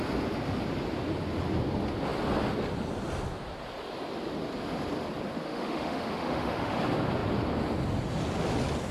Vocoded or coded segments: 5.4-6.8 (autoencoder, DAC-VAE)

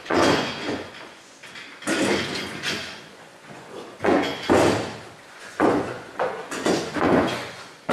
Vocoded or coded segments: 0.0-1.4 (vocoder, Vocos); 2.2-4.3; 5.2-7.9

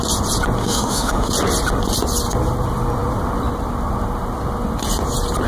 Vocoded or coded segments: 0.6-1.3 (autoencoder, DAC-VAE)

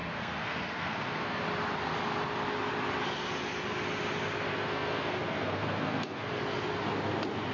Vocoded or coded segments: 0.0-1.4 (codec, SNAC); 4.5-6.3

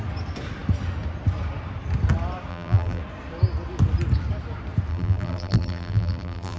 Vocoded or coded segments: 2.5-3.0 (vocoder, BigVGAN v2); 4.9-6.6

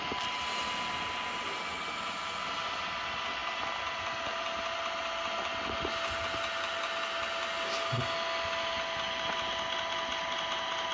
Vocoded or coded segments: none

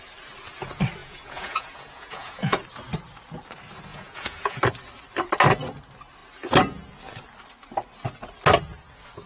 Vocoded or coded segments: 1.0-2.6 (vocoder, Vocos); 3.9-4.6